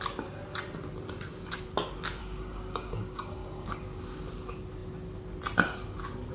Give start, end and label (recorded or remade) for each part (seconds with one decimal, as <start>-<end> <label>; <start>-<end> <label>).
0.0-2.2 recorded; 2.2-4.0 remade; 4.0-6.3 recorded